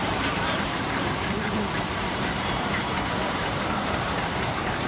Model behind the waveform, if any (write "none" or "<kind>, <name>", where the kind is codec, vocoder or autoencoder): vocoder, BigVGAN v2